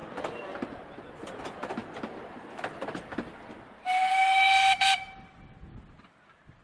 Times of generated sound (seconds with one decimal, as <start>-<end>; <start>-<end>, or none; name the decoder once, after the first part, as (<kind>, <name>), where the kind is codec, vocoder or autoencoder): none